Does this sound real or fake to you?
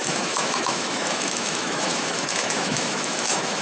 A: fake